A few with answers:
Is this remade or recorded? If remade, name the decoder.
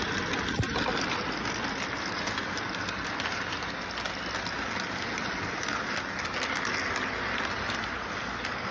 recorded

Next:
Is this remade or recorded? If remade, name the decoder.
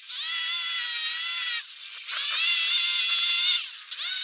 recorded